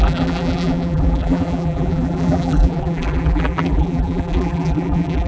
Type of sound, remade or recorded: remade